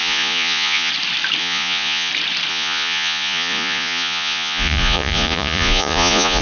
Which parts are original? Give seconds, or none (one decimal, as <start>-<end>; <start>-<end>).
0.9-1.4; 2.1-2.5

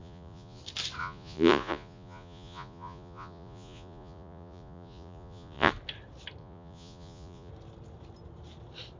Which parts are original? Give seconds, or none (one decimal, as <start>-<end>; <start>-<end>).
0.6-1.0; 5.7-6.4; 7.5-9.0

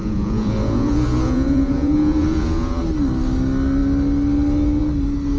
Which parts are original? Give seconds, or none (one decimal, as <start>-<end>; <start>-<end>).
2.8-5.4

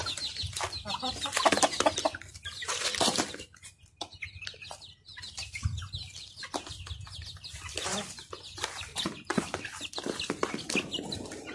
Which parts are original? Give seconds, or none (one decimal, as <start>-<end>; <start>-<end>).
0.0-8.9; 9.4-11.5

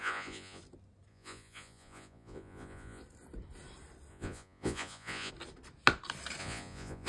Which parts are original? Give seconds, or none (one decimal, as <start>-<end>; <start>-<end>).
0.6-1.1; 3.0-4.1; 5.3-6.4

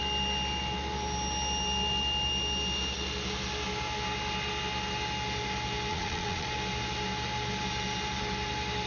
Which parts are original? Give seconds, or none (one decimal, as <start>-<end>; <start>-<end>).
0.0-5.9; 6.5-8.9